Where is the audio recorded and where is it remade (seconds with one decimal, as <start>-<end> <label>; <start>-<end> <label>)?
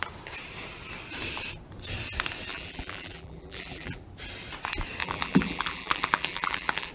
0.0-2.5 recorded; 2.5-4.0 remade; 4.0-5.0 recorded; 5.0-6.9 remade